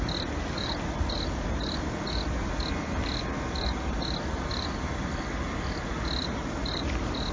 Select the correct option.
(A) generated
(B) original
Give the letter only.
B